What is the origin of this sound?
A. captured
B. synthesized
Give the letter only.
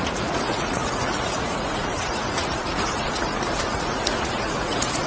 B